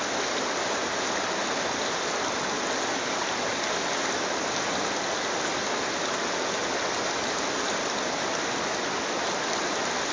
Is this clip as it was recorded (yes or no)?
yes